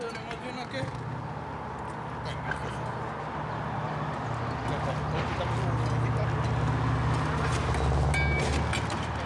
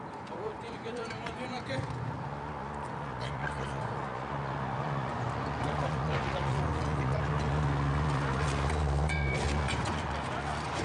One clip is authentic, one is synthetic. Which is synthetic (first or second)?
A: second